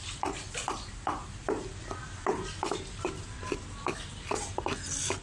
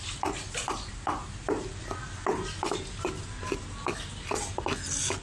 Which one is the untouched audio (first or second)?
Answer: second